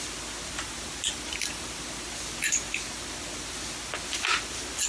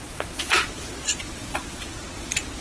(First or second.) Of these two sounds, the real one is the first